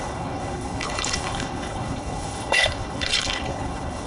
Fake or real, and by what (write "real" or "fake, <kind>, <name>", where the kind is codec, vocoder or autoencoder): fake, codec, HILCodec